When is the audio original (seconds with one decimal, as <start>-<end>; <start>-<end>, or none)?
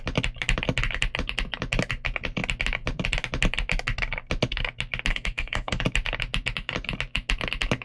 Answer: 0.0-5.1; 5.8-7.8